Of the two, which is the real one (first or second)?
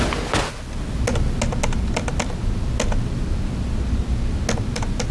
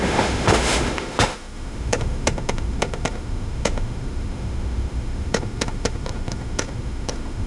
first